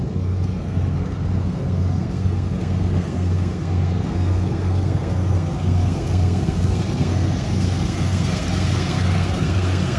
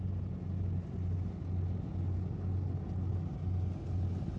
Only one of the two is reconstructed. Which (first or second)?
first